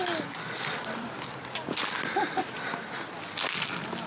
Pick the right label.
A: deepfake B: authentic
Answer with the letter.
B